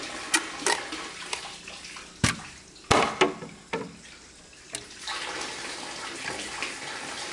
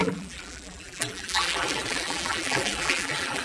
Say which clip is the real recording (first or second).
first